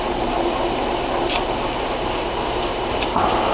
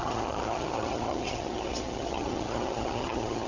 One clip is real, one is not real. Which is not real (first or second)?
second